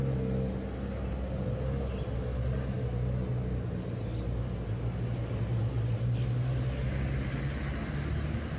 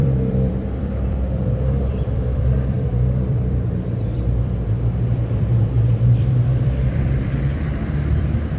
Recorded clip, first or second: first